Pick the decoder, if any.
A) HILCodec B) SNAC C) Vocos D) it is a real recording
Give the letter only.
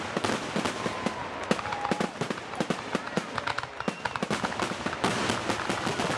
D